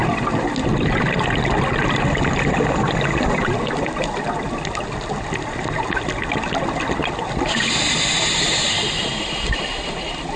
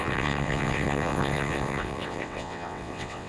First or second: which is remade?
second